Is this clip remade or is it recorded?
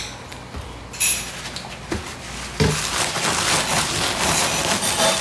recorded